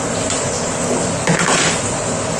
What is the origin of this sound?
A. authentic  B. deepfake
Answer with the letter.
B